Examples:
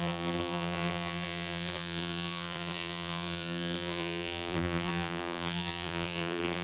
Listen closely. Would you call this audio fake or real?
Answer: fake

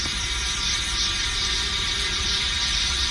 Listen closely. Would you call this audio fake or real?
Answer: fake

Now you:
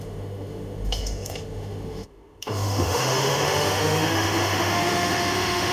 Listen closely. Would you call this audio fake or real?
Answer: fake